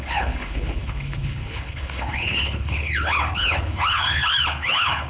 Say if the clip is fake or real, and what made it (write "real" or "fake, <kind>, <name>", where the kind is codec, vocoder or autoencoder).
fake, codec, HILCodec